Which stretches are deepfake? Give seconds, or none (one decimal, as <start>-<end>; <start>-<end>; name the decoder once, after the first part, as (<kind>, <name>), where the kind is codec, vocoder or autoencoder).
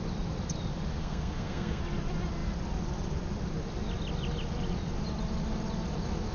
1.0-1.8 (codec, SNAC)